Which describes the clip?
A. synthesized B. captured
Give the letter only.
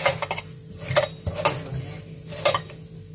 B